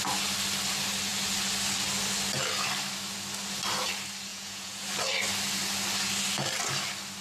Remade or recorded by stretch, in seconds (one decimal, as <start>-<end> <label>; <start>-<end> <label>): 0.0-4.3 recorded; 4.3-4.9 remade; 4.9-7.2 recorded